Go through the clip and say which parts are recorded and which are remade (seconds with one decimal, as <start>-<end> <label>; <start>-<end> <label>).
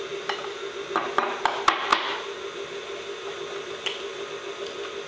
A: 0.0-5.1 recorded